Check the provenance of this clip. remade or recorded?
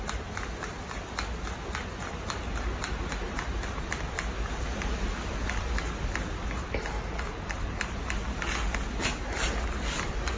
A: recorded